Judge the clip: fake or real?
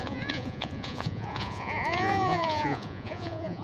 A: fake